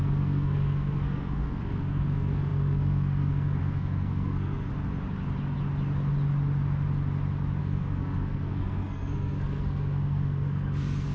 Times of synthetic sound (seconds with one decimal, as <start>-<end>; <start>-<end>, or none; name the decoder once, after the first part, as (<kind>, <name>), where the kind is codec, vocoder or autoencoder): 0.0-4.7 (codec, SNAC); 7.6-11.1